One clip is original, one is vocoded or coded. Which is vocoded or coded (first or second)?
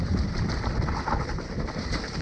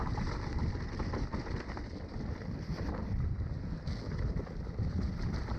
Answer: first